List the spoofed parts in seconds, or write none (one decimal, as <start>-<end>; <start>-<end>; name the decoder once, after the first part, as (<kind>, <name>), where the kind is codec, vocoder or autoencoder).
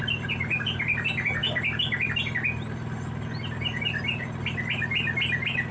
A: none